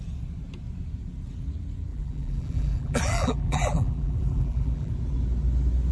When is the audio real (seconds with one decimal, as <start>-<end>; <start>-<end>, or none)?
0.0-1.9; 4.9-5.9

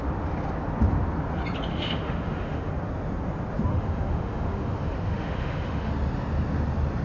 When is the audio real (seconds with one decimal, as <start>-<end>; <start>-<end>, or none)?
0.0-1.7; 2.7-3.7; 5.9-7.0

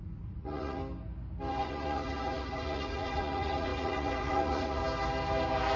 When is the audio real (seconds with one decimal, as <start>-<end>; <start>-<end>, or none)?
0.8-1.5; 4.8-5.8

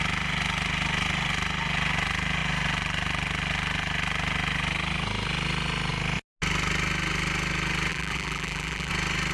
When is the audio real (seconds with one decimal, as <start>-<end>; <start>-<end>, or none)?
0.0-7.9; 8.9-9.3